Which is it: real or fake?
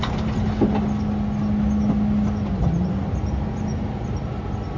real